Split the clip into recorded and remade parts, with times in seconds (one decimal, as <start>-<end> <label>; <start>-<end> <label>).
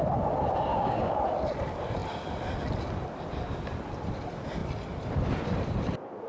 0.0-0.7 recorded; 0.7-1.2 remade; 1.2-6.3 recorded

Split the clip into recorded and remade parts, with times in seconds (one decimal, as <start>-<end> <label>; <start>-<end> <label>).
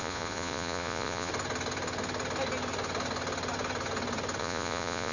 0.0-1.3 remade; 1.3-4.4 recorded; 4.4-5.1 remade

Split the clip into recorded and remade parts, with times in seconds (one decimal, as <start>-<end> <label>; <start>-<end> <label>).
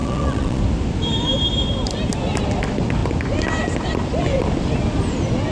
0.0-0.6 remade; 0.6-5.5 recorded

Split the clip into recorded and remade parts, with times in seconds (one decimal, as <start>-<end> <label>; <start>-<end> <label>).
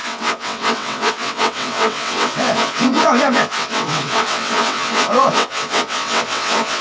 0.0-6.8 remade